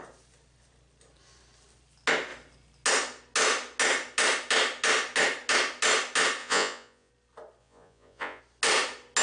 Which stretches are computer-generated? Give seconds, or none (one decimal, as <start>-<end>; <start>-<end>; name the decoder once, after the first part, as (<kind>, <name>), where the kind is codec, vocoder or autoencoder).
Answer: 6.4-7.1 (vocoder, Vocos); 7.6-8.4